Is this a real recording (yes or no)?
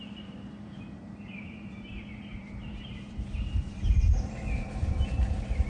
no